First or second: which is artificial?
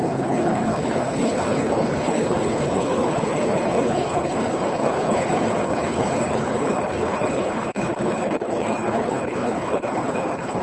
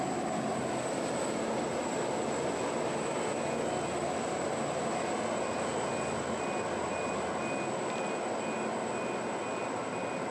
first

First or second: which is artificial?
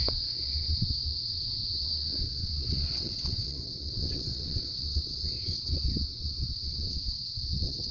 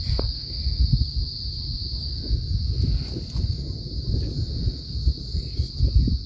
first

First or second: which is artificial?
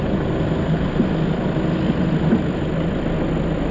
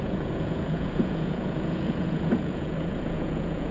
second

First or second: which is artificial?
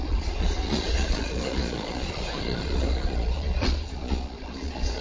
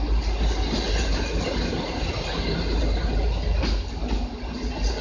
first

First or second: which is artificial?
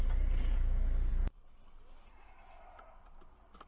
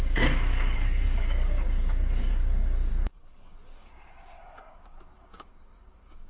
second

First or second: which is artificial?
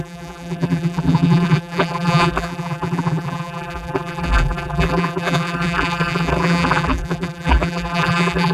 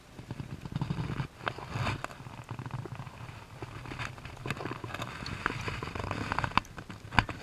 first